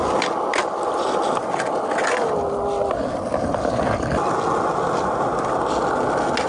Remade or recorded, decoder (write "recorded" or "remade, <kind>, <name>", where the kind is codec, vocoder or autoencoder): recorded